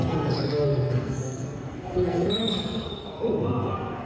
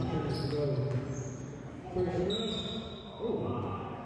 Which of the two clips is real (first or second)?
second